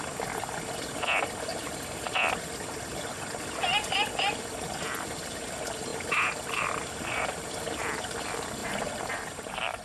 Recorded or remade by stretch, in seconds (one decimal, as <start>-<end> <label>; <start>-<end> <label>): 0.0-8.6 recorded; 8.6-9.8 remade